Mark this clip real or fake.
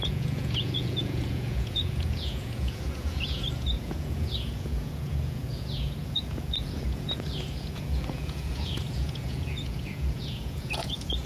fake